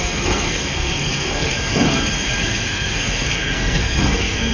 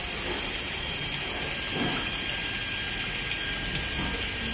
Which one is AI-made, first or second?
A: first